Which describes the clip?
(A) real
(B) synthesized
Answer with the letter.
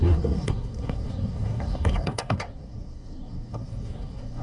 B